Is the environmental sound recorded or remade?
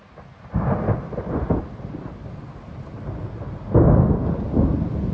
recorded